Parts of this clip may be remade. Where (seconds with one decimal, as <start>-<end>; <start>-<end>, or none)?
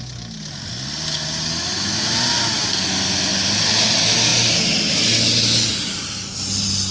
none